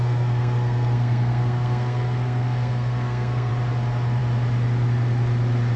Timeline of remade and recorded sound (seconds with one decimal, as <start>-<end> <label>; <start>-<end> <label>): 0.0-3.5 remade; 3.5-5.8 recorded